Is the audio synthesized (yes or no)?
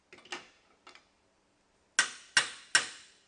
no